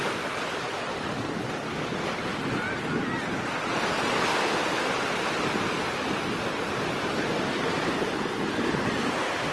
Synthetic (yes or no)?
no